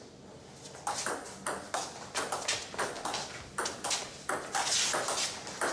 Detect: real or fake real